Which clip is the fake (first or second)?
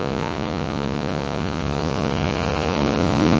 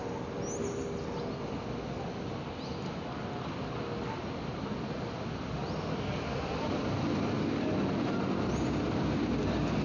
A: first